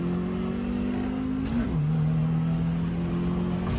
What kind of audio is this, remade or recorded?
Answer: recorded